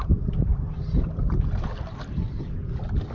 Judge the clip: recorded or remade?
recorded